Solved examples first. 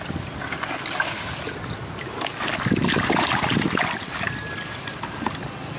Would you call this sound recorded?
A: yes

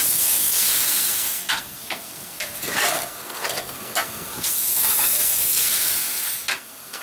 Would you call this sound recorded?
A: no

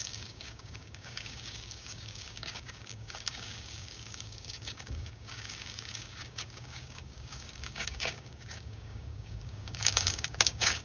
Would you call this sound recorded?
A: no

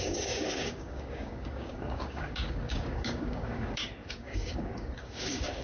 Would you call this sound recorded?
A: no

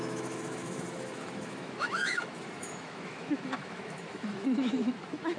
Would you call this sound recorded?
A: no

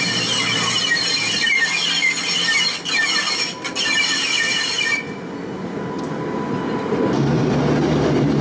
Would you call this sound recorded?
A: yes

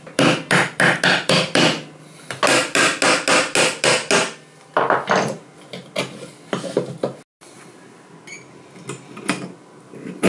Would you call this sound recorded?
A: yes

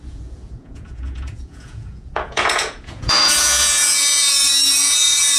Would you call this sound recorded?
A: no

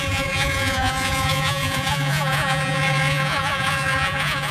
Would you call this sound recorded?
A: no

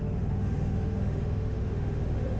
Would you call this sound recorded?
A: no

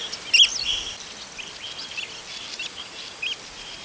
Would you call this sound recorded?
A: yes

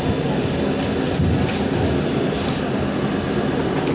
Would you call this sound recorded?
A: yes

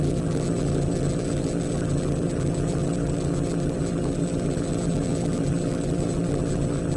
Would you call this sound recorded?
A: no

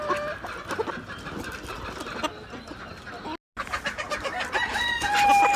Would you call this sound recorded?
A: yes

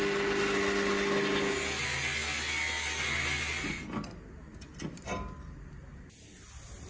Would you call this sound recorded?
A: yes